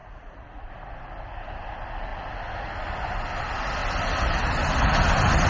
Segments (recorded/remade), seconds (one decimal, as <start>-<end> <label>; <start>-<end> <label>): 0.0-0.7 remade; 0.7-5.5 recorded